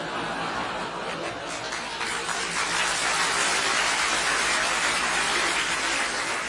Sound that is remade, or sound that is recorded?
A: recorded